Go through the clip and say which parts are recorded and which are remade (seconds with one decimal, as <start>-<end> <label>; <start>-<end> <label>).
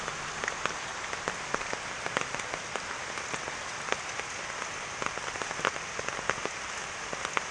0.0-7.5 recorded